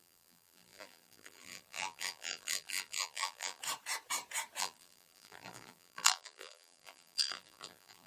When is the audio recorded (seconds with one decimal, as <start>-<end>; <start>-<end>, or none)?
3.6-4.6